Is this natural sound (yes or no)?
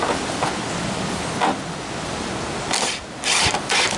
yes